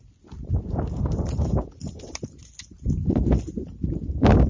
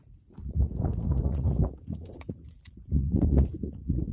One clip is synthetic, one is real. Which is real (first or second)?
first